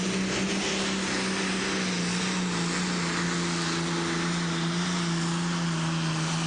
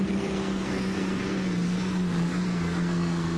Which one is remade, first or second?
second